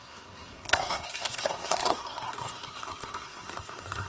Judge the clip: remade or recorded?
remade